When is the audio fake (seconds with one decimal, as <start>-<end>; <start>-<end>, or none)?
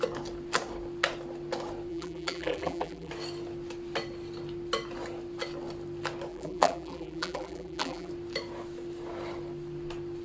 1.9-3.1; 6.3-8.1